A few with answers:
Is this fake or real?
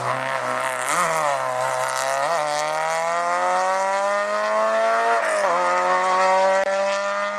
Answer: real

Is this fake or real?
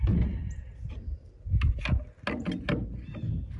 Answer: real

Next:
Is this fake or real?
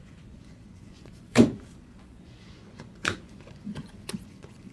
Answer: fake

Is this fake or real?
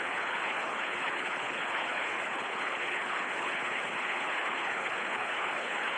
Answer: fake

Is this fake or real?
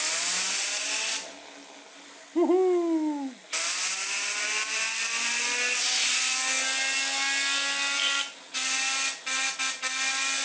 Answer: real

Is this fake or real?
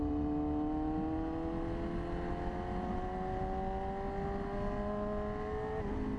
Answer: real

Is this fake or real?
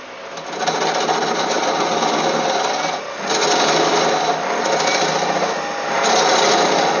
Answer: real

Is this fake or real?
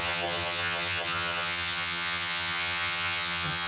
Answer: fake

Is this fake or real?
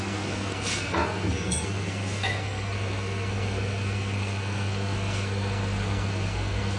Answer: fake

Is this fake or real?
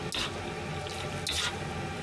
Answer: real